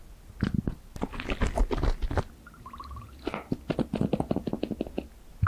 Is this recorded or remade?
recorded